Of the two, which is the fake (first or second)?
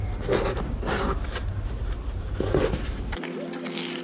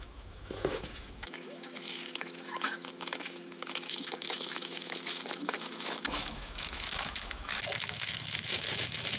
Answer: second